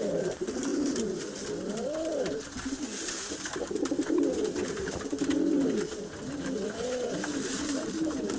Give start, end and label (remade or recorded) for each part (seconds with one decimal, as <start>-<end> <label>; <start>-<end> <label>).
0.0-8.4 recorded